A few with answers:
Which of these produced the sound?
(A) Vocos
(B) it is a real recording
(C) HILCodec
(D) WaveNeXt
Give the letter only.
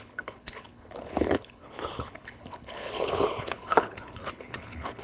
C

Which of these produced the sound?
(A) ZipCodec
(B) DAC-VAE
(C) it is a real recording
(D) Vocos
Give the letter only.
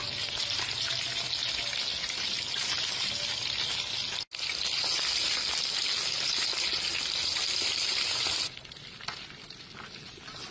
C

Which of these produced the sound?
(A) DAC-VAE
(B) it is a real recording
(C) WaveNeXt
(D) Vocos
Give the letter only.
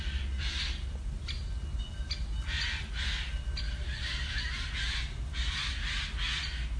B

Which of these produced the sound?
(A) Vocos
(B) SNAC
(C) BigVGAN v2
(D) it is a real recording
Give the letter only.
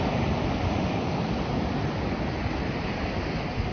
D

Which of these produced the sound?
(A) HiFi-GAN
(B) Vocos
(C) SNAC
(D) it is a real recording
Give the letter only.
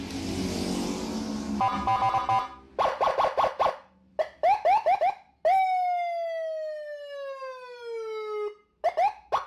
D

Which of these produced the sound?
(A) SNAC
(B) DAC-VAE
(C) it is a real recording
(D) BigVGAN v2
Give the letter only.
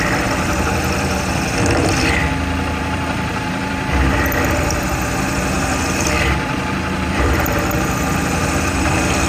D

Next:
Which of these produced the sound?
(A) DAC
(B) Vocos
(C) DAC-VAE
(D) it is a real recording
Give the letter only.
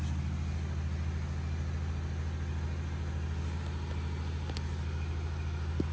D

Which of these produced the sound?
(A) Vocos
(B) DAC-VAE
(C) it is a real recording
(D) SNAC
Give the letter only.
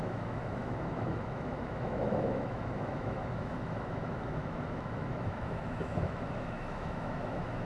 B